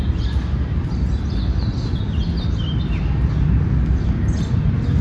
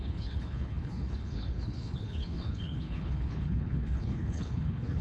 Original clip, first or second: first